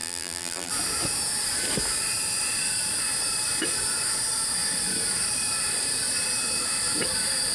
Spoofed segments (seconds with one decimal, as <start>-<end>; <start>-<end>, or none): 0.0-0.7